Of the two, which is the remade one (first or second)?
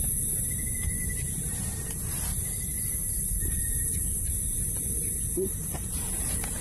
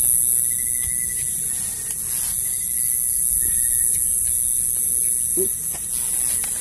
first